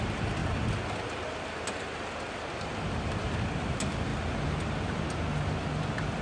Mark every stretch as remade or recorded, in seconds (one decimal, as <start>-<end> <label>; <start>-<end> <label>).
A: 0.0-6.2 recorded